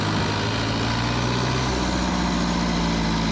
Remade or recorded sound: recorded